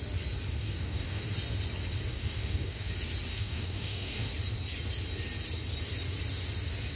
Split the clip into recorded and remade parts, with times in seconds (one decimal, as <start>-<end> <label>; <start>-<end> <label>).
0.0-0.6 recorded; 0.6-1.2 remade; 1.2-2.1 recorded; 2.1-2.9 remade; 2.9-3.3 recorded; 3.3-4.3 remade; 4.3-7.0 recorded